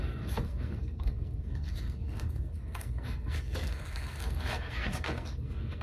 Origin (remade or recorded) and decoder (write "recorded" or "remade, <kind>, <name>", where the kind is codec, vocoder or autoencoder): remade, codec, SNAC